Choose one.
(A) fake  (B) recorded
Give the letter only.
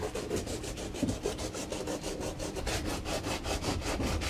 A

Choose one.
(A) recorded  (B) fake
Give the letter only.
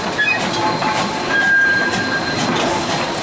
B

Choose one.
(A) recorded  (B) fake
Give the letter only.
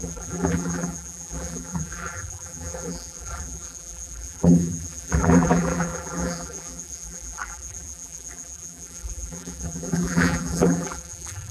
B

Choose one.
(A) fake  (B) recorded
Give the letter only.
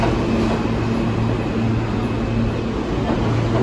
B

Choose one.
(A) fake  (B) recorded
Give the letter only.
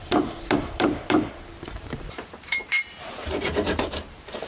A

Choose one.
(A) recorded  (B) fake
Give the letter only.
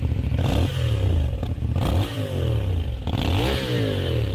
B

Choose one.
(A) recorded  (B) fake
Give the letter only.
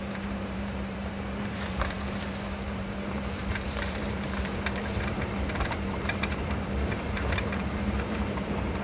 B